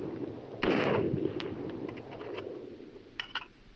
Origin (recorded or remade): recorded